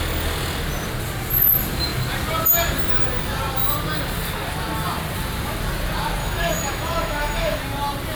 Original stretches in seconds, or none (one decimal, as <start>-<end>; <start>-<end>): 0.0-6.2; 7.6-8.1